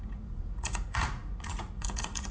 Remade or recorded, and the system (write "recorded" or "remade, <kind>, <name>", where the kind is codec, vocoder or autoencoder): remade, vocoder, Vocos